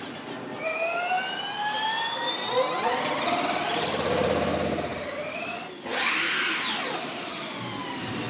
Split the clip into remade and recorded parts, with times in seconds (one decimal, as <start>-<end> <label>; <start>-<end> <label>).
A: 0.0-8.3 recorded